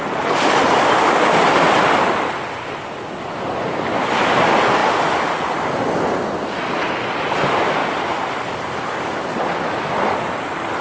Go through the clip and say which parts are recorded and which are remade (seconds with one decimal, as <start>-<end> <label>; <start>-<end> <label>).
0.0-10.8 recorded

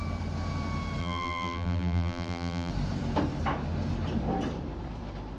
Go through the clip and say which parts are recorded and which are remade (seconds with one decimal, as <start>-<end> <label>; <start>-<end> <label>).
0.0-1.0 recorded; 1.0-2.7 remade; 2.7-5.4 recorded

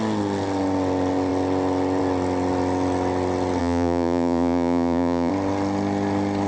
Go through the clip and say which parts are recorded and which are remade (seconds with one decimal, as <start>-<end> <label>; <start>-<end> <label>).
0.0-3.6 recorded; 3.6-5.3 remade; 5.3-6.5 recorded

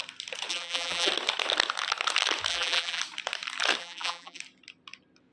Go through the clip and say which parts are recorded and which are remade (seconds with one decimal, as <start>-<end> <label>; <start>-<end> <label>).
0.0-0.5 recorded; 0.5-1.1 remade; 1.1-2.5 recorded; 2.5-3.0 remade; 3.0-3.8 recorded; 3.8-4.4 remade; 4.4-5.3 recorded

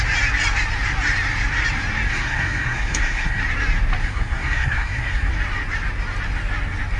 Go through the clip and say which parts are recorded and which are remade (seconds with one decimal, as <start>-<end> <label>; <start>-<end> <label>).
0.0-2.1 recorded; 2.1-3.4 remade; 3.4-4.0 recorded; 4.0-5.3 remade; 5.3-7.0 recorded

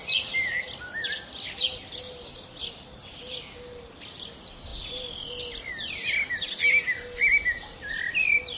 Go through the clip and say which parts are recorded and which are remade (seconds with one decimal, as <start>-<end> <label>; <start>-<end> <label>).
0.0-8.6 recorded

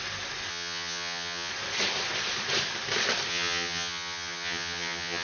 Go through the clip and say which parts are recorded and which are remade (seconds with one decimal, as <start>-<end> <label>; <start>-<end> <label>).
0.0-0.5 recorded; 0.5-1.5 remade; 1.5-3.3 recorded; 3.3-5.2 remade